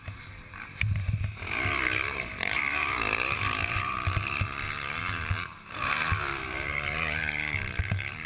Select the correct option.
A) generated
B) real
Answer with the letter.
A